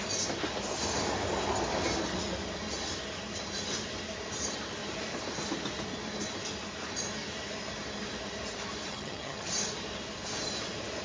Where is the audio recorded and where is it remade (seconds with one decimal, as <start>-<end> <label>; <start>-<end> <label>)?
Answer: 0.0-8.9 recorded; 8.9-9.5 remade; 9.5-11.0 recorded